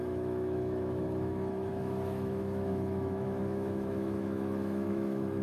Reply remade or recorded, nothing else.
remade